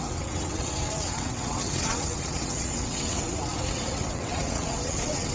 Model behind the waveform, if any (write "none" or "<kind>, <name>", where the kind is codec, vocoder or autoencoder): vocoder, WaveNeXt